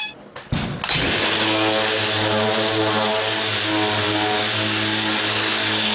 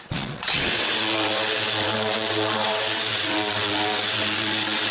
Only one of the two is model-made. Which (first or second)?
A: second